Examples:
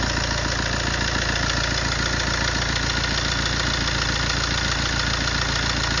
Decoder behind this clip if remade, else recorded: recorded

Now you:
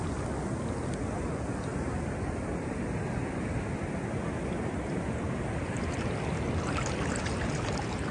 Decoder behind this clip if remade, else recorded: recorded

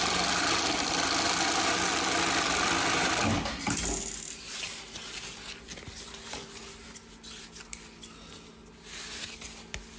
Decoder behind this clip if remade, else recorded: recorded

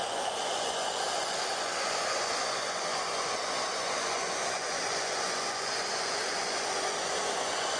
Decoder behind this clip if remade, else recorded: remade, vocoder, Vocos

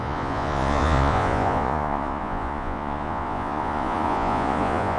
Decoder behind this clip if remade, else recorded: remade, vocoder, Vocos